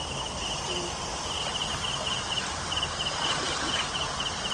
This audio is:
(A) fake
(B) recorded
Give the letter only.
B